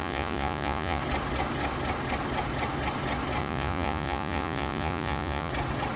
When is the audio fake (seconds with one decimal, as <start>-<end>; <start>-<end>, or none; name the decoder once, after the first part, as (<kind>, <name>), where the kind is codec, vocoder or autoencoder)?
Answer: 0.0-1.0 (vocoder, Vocos); 3.4-5.5